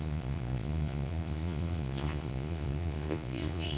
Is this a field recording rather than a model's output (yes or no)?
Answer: no